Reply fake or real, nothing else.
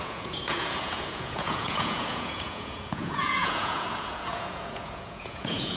fake